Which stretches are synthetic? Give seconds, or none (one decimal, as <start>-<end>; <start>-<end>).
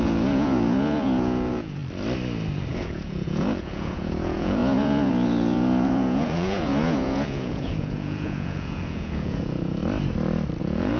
0.0-1.8; 2.7-9.8; 10.6-11.0